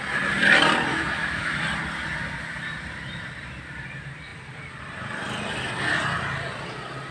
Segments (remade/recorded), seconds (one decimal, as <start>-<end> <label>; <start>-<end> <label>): 0.0-0.9 recorded; 0.9-1.6 remade; 1.6-7.1 recorded